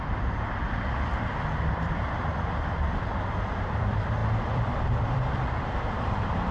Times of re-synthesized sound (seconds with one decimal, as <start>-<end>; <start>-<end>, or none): 0.0-2.3; 2.8-6.5